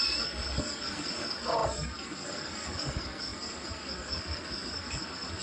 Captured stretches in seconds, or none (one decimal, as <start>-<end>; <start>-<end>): none